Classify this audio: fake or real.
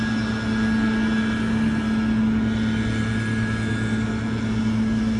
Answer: real